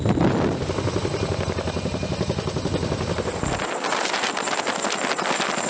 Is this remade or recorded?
recorded